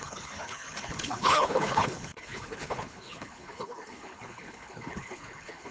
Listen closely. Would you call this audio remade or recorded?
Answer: remade